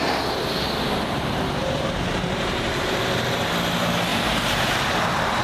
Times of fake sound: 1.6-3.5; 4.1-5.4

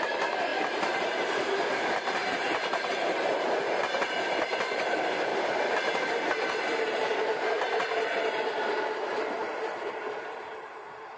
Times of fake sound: 0.0-11.2

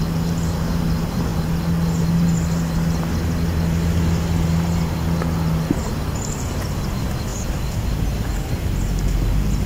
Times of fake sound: none

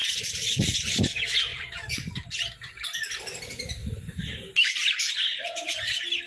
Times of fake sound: 0.0-1.0; 1.5-2.3; 3.8-4.5

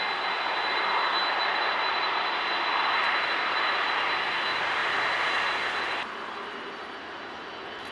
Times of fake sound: none

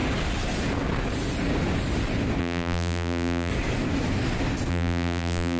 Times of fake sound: 2.4-3.5; 4.7-5.6

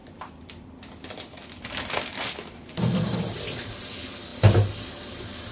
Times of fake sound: 0.0-3.2